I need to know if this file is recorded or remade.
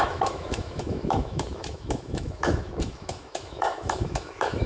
remade